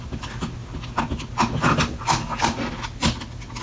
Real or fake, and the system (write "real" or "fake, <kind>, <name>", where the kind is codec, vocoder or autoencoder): real